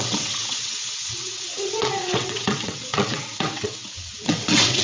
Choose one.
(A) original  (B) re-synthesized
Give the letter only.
B